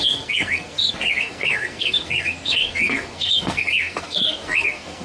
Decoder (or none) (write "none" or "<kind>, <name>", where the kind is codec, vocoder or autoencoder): codec, SNAC